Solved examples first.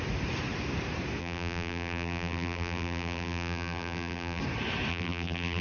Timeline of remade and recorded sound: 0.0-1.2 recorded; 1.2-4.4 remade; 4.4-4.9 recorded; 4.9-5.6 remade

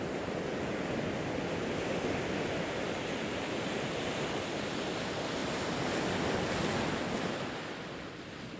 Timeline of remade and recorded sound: 0.0-5.4 remade; 5.4-8.2 recorded; 8.2-8.6 remade

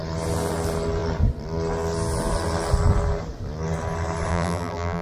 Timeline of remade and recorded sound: 0.0-4.3 recorded; 4.3-5.0 remade

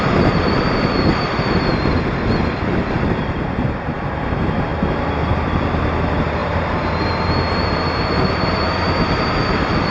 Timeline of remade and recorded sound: 0.0-1.7 remade; 1.7-2.7 recorded; 2.7-4.7 remade; 4.7-5.3 recorded; 5.3-9.9 remade

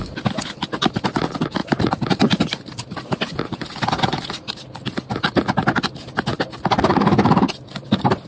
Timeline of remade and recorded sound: 0.0-1.6 recorded; 1.6-3.7 remade; 3.7-8.3 recorded